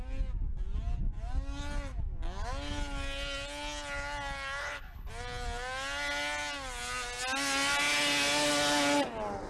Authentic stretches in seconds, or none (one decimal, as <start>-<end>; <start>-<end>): 0.0-4.6; 5.1-9.5